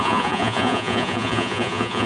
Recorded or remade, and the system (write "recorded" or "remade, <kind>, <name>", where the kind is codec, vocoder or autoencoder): remade, vocoder, Vocos